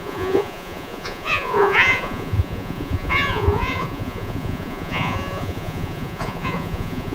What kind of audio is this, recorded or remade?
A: remade